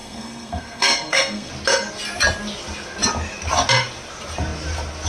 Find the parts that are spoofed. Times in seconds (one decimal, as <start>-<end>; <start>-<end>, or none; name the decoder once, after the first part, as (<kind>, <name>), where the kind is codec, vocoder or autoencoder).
0.0-1.5 (codec, SNAC)